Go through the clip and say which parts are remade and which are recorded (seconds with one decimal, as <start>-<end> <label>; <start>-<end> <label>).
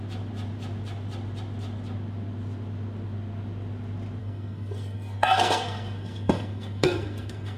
0.0-4.2 recorded; 4.2-7.6 remade